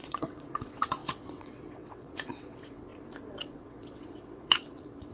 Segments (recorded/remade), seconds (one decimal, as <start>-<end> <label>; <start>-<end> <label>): 0.0-2.9 remade; 2.9-3.4 recorded; 3.4-5.1 remade